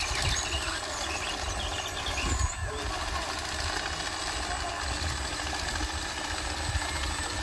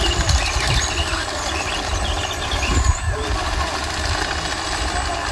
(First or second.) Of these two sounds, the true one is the first